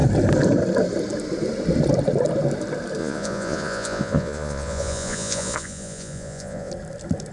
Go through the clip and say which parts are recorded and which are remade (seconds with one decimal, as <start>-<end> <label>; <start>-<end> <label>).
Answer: 0.0-3.0 recorded; 3.0-6.7 remade; 6.7-7.3 recorded